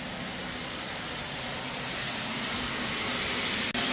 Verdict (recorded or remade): recorded